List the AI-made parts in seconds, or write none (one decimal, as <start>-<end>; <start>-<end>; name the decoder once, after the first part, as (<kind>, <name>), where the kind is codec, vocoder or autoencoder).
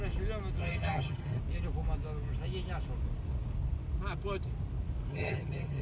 0.6-1.4 (vocoder, HiFi-GAN); 5.1-5.8